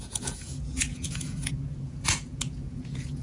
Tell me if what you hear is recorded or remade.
remade